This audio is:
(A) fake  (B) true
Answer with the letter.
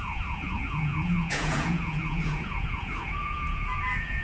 A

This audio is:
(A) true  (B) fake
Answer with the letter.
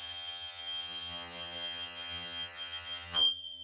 B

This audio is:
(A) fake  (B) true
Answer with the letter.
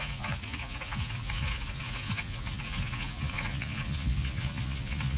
A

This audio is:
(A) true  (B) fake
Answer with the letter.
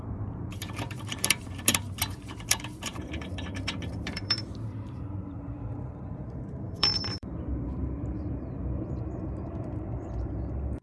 B